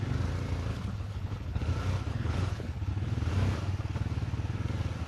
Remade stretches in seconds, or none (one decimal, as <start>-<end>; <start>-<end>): 0.7-1.7; 2.1-2.9